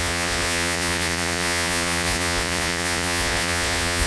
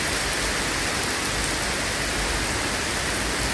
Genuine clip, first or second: second